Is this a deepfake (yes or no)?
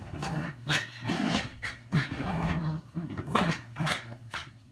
yes